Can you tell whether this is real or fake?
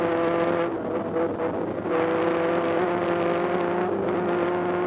real